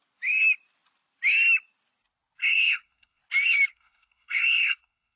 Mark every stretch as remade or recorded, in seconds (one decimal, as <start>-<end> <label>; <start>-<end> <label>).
0.0-2.4 recorded; 2.4-3.2 remade; 3.2-3.7 recorded; 3.7-5.2 remade